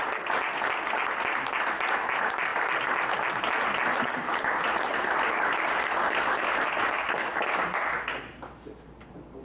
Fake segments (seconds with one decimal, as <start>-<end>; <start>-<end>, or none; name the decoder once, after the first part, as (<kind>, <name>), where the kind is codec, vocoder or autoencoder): none